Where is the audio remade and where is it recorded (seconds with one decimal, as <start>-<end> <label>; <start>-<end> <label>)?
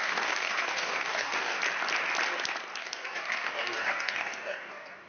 0.0-1.6 remade; 1.6-2.8 recorded; 2.8-5.1 remade